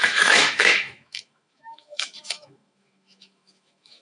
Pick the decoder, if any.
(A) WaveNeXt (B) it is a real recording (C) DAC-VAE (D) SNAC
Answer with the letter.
C